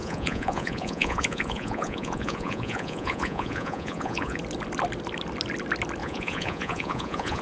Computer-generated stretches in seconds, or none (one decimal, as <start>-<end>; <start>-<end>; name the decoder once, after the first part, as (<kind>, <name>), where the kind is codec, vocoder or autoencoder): 0.0-4.4 (vocoder, Vocos); 6.0-7.4